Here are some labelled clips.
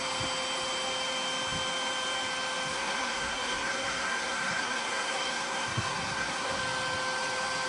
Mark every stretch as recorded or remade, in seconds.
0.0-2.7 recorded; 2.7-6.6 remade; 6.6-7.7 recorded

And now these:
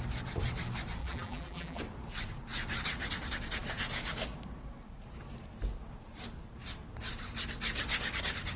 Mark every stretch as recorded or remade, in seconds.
0.0-1.0 recorded; 1.0-1.8 remade; 1.8-8.6 recorded

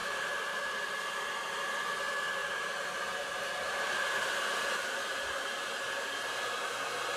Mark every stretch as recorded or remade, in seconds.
0.0-0.9 remade; 0.9-2.4 recorded; 2.4-6.7 remade; 6.7-7.2 recorded